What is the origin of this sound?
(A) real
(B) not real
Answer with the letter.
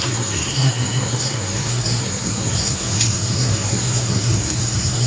B